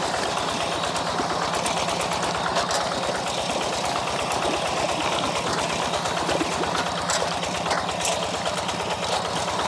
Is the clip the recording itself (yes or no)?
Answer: yes